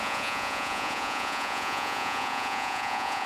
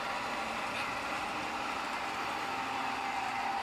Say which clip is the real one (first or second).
second